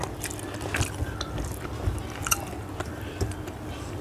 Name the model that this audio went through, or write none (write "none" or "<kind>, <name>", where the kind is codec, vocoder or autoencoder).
none